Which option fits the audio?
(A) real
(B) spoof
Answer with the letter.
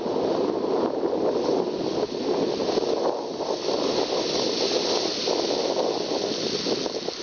A